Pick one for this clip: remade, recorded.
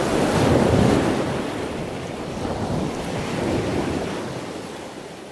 recorded